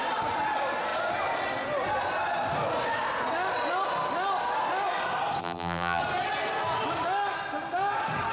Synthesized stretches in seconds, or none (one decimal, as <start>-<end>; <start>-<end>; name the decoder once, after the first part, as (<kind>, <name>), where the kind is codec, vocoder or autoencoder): 5.4-6.0 (vocoder, BigVGAN v2)